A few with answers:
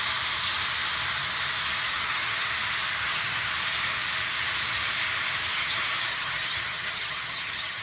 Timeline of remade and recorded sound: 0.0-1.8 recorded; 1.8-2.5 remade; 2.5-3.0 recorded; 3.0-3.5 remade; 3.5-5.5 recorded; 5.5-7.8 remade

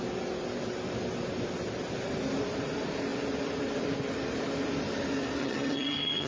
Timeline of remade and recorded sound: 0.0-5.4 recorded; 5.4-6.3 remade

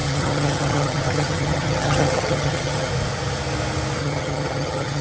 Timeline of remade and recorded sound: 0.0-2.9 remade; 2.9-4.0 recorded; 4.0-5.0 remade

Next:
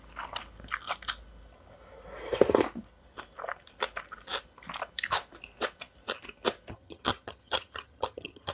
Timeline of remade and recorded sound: 0.0-6.7 recorded; 6.7-8.5 remade